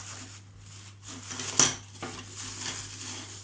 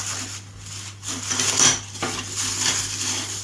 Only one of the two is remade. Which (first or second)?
second